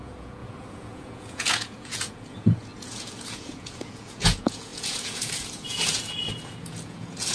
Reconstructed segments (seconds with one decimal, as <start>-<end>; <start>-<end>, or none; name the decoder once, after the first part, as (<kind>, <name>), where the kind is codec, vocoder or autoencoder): 0.0-7.3 (vocoder, Vocos)